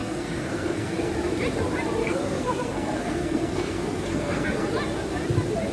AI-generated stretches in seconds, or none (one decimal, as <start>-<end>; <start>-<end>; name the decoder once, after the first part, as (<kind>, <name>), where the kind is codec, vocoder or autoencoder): 0.0-1.1 (codec, SNAC); 2.0-4.7

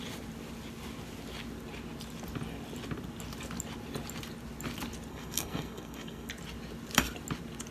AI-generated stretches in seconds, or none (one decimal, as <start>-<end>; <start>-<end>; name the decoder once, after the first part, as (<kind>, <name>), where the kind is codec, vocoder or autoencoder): 5.1-6.3 (codec, SNAC)

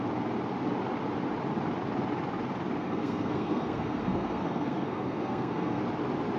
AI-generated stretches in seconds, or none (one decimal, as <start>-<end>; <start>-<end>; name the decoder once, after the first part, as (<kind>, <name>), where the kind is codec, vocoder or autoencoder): 2.8-5.8 (codec, SNAC)

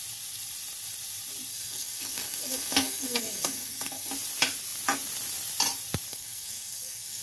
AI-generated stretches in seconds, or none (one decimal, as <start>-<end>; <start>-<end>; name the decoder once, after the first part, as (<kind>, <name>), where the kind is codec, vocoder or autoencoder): 1.5-4.1 (codec, SNAC); 6.1-7.2

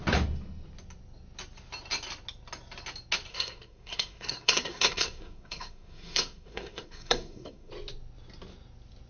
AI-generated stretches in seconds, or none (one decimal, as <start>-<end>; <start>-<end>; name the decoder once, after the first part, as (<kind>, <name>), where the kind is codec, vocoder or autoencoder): 3.3-7.7 (codec, SNAC)

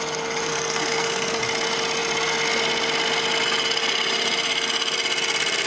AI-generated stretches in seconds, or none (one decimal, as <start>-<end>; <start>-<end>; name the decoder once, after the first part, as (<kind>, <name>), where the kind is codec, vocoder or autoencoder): 0.5-1.4 (codec, SNAC)

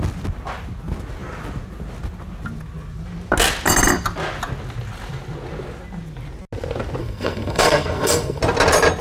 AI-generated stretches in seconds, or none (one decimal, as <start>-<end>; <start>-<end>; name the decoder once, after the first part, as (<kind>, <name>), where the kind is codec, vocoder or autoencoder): 7.0-8.4 (codec, SNAC)